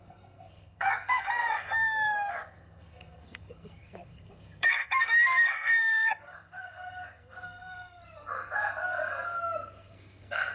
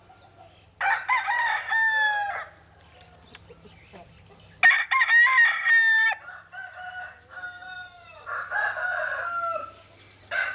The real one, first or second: second